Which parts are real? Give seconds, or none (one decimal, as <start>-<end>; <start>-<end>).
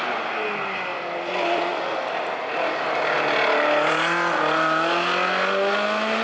0.0-0.9; 1.9-6.2